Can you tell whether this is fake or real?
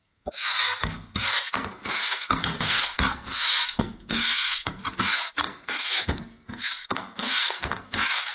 fake